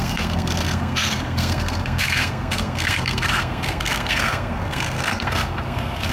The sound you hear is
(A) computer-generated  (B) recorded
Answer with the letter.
A